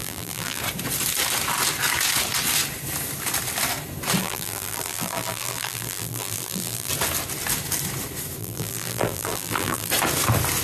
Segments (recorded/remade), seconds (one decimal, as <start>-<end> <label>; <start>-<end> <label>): 0.0-0.6 remade; 0.6-4.2 recorded; 4.2-6.9 remade; 6.9-8.4 recorded; 8.4-9.9 remade; 9.9-10.6 recorded